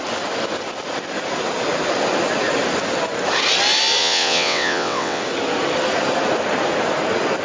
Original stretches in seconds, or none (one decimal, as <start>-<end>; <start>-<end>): 0.0-4.0; 5.2-7.4